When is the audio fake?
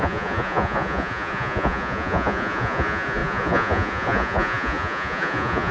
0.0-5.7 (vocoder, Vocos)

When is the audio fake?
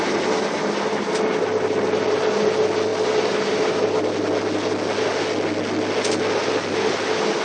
none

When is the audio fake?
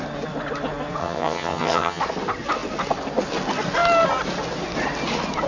1.0-2.0 (vocoder, HiFi-GAN)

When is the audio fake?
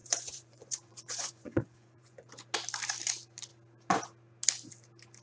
0.0-2.3 (vocoder, Vocos)